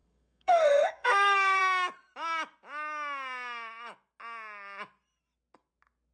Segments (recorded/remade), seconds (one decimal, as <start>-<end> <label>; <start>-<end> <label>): 0.0-1.6 remade; 1.6-6.1 recorded